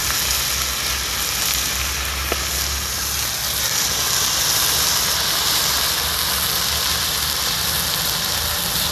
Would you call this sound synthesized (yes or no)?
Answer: no